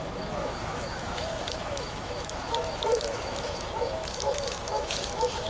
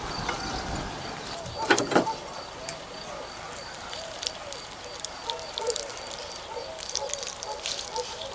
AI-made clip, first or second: first